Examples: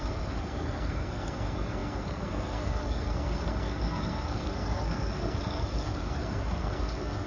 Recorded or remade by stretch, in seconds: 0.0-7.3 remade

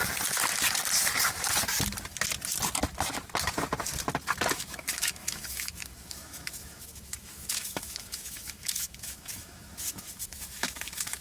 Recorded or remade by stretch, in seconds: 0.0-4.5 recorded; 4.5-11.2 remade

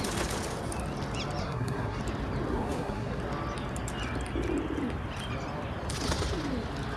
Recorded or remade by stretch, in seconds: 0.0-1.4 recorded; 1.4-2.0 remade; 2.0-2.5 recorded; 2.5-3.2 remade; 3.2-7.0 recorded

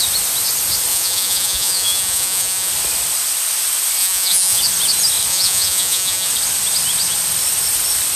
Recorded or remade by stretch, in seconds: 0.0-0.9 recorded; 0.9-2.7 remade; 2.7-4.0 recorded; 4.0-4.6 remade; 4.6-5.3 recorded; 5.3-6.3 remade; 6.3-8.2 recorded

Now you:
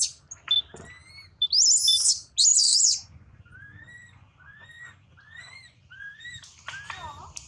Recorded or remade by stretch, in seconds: 0.0-2.5 recorded; 2.5-6.2 remade; 6.2-7.5 recorded

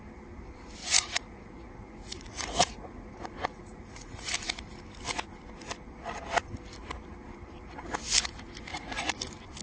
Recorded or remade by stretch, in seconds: 0.0-0.8 recorded; 0.8-4.3 remade; 4.3-8.7 recorded; 8.7-9.2 remade; 9.2-9.6 recorded

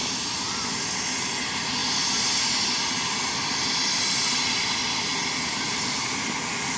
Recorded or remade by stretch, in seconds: 0.0-6.8 recorded

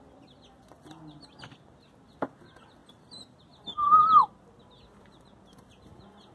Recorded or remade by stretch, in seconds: 0.0-6.3 recorded